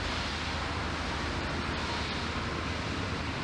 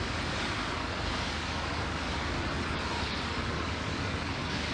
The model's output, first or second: second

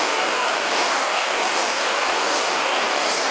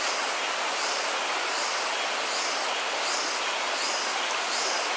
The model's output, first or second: first